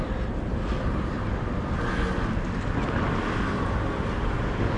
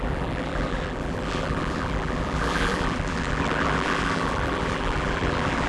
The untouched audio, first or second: first